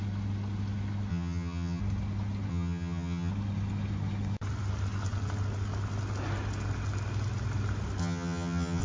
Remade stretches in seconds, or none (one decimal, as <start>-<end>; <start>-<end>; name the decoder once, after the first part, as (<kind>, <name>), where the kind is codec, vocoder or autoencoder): 1.1-1.8 (vocoder, HiFi-GAN); 2.5-3.3; 8.0-8.8